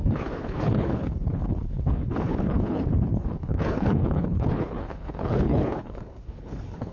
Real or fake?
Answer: fake